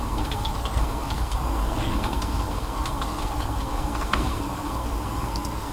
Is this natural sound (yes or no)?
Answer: no